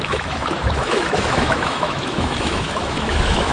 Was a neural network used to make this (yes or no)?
yes